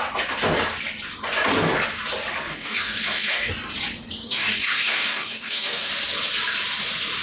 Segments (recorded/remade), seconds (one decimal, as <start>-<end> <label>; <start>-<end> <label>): 0.0-2.5 recorded; 2.5-3.5 remade; 3.5-4.2 recorded; 4.2-5.9 remade; 5.9-7.2 recorded